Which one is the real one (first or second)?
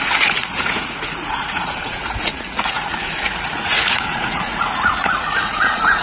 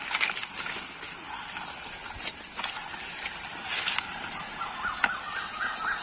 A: second